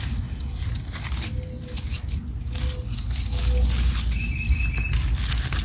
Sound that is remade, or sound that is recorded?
recorded